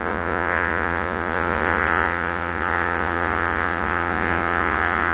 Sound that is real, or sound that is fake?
fake